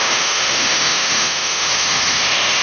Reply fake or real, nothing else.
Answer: fake